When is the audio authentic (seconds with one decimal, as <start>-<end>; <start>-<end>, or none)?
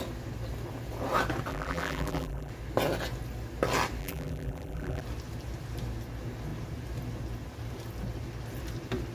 0.0-1.5; 2.5-4.0; 5.0-9.1